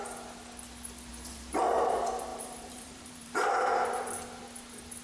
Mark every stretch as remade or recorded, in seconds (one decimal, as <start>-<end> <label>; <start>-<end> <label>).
0.0-1.1 recorded; 1.1-1.7 remade; 1.7-2.3 recorded; 2.3-4.1 remade; 4.1-5.0 recorded